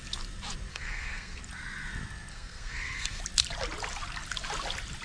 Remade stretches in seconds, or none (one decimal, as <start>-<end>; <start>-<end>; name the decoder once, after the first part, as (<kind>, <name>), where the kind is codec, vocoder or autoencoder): 0.7-1.4 (codec, SNAC); 2.3-3.2